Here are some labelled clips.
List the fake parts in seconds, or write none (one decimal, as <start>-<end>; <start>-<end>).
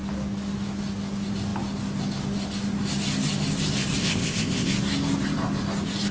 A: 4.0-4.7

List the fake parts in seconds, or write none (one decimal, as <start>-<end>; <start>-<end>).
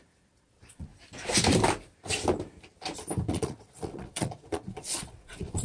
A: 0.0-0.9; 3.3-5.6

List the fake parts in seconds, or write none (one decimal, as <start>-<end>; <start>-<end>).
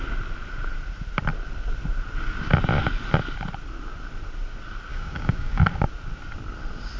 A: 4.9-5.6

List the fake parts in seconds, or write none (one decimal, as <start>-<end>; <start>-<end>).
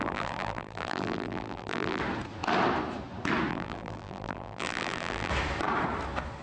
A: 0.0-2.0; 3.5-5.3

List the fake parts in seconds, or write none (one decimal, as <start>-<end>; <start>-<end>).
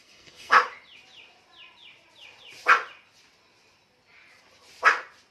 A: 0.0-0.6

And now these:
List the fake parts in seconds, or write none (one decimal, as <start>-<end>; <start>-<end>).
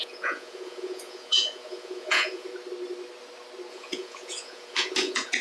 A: 0.0-2.5; 3.7-5.4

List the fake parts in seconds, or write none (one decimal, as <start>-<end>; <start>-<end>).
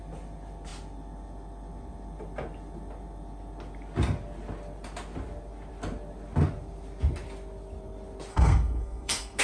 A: 8.3-9.4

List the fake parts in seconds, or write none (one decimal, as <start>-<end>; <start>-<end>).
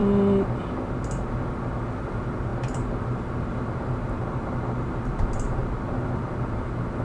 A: 2.5-6.3